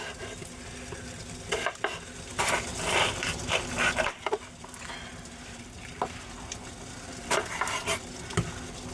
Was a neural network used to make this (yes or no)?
no